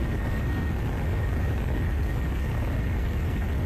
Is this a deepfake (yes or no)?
yes